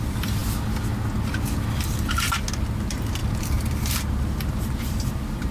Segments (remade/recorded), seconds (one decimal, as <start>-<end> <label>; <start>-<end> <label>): 0.0-0.4 remade; 0.4-2.7 recorded; 2.7-5.5 remade